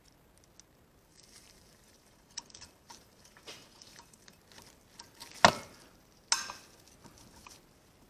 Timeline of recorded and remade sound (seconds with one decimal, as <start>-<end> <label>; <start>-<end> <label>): 0.0-1.1 recorded; 1.1-4.4 remade; 4.4-8.1 recorded